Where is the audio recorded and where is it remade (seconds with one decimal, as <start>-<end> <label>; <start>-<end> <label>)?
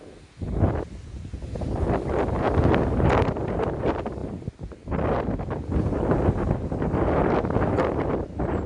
0.0-8.7 recorded